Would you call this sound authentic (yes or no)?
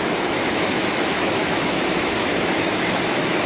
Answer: no